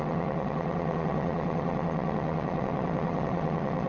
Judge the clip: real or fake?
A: fake